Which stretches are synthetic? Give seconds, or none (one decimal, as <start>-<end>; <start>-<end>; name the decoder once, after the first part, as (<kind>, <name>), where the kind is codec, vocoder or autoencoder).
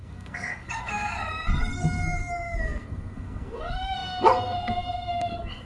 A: 0.0-5.7 (codec, SNAC)